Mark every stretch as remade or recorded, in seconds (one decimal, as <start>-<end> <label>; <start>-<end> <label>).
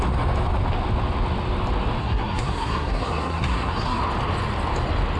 0.0-2.0 recorded; 2.0-4.0 remade; 4.0-5.2 recorded